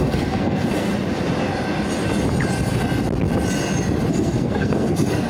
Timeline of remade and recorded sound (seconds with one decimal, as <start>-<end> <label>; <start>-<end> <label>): 0.0-0.9 remade; 0.9-4.1 recorded; 4.1-5.3 remade